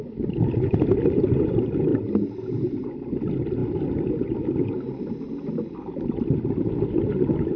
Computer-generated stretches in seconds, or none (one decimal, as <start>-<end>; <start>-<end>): none